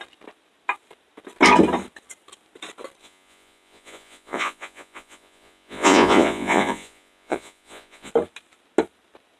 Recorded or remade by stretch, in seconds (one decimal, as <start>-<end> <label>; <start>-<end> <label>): 0.0-3.0 recorded; 3.0-8.1 remade; 8.1-9.4 recorded